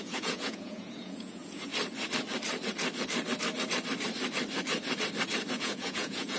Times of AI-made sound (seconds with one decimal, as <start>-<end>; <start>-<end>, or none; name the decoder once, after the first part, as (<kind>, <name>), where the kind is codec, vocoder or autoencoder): 0.0-1.7 (vocoder, Vocos); 5.5-6.4